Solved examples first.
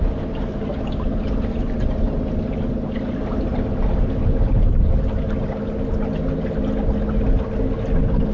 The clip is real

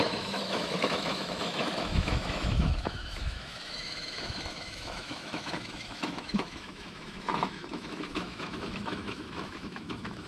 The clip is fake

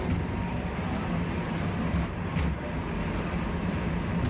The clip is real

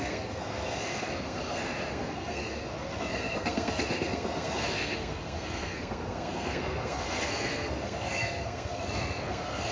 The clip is fake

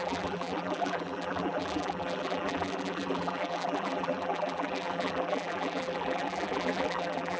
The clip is fake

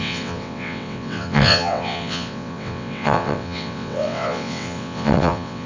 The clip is fake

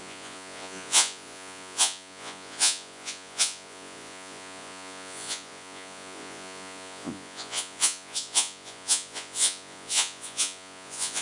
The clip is fake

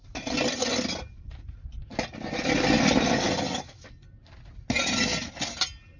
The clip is real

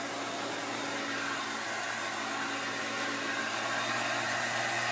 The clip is real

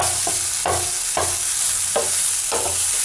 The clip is real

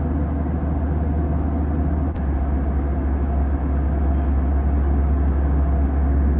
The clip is real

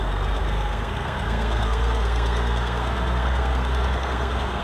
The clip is fake